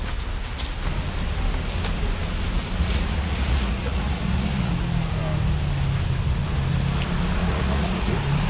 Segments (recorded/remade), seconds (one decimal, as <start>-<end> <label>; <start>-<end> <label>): 0.0-2.8 recorded; 2.8-4.7 remade; 4.7-7.4 recorded; 7.4-8.1 remade; 8.1-8.5 recorded